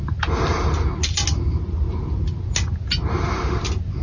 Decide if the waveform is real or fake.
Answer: real